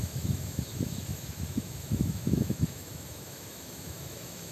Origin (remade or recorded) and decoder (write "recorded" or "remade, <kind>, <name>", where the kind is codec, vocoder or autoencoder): remade, autoencoder, DAC-VAE